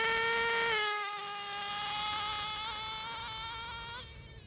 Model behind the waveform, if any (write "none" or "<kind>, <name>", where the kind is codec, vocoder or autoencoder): none